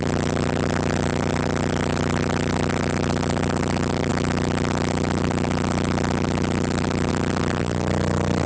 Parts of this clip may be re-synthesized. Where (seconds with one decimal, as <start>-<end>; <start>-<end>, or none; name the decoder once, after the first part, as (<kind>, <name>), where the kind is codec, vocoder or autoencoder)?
none